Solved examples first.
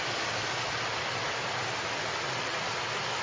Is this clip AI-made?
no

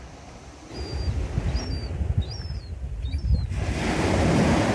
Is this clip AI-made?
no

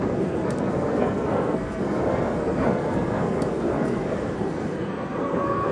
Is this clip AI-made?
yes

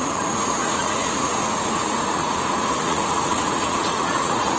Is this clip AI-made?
yes